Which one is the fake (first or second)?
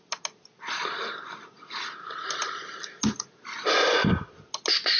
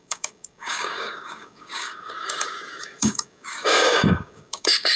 second